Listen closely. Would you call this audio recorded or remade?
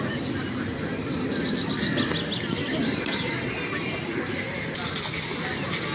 recorded